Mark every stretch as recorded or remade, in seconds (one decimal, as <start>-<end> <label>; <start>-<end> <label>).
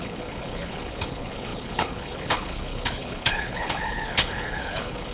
0.0-5.1 remade